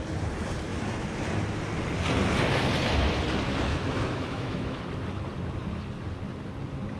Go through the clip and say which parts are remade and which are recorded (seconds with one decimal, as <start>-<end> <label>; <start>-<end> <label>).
0.0-3.7 recorded; 3.7-4.8 remade; 4.8-7.0 recorded